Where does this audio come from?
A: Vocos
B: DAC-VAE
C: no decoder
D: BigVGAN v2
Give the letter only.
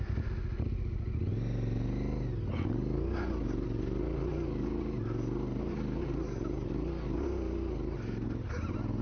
C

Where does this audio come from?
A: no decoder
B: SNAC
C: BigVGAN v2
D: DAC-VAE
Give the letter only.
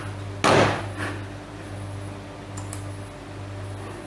A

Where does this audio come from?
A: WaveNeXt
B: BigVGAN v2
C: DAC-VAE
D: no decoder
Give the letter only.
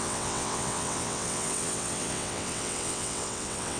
A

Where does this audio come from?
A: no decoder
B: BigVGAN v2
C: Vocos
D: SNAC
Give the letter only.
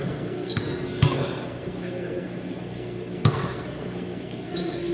D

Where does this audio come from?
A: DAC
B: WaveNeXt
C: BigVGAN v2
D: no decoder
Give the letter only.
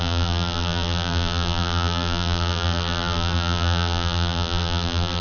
C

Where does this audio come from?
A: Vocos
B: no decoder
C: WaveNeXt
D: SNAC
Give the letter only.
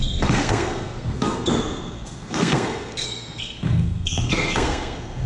D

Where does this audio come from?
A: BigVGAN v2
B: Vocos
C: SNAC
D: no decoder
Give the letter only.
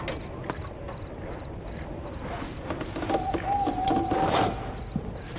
D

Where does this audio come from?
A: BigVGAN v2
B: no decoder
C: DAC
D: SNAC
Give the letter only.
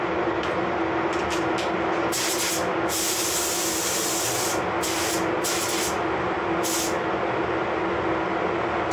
B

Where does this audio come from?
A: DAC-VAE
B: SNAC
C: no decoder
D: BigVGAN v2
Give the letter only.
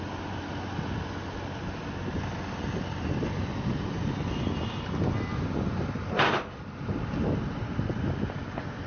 C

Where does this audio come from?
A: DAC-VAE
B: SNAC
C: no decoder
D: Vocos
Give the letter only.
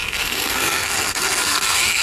B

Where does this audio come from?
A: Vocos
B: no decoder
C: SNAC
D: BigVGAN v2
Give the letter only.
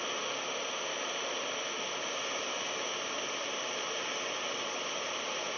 B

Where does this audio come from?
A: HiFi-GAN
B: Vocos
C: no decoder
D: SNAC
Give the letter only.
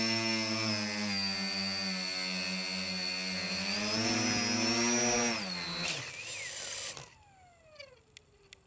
C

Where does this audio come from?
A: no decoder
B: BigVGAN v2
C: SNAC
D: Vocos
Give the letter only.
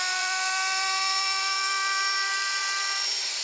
B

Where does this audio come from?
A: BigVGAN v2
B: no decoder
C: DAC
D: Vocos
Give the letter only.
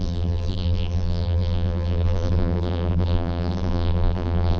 A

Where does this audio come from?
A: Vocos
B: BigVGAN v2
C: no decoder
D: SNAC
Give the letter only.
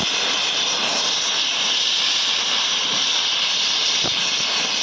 B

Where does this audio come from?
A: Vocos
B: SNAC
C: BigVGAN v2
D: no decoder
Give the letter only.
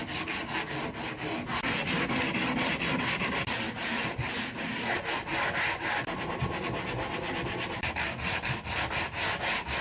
D